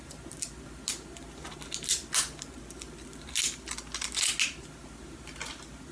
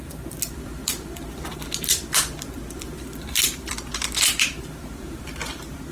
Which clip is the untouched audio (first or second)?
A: first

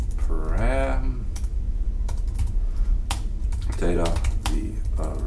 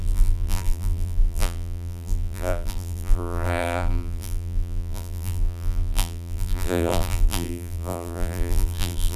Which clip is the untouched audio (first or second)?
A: first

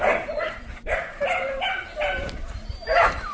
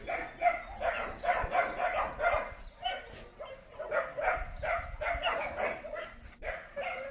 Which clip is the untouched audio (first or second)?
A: second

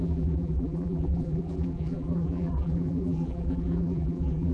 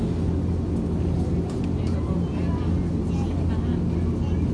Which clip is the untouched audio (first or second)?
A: second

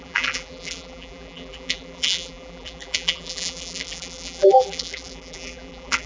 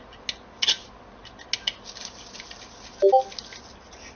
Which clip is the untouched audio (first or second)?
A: second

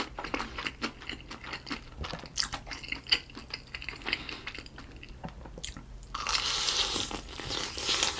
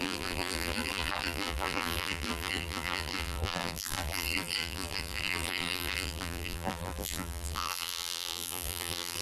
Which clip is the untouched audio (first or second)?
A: first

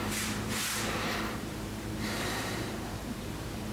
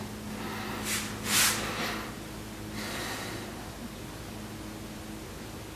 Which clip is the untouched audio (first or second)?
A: second